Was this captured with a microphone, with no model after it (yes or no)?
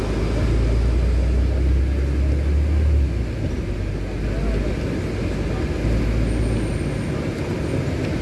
yes